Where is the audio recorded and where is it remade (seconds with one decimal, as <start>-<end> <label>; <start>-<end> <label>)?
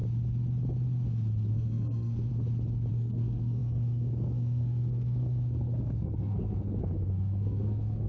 0.0-1.5 recorded; 1.5-2.3 remade; 2.3-2.9 recorded; 2.9-8.1 remade